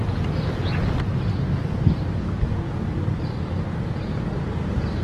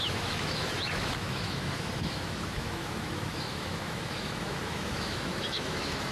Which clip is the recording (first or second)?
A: first